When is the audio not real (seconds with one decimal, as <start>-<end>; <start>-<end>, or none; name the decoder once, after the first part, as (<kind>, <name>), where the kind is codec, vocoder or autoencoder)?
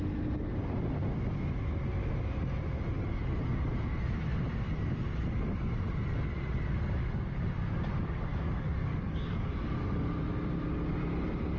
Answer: 8.3-10.1 (codec, DAC)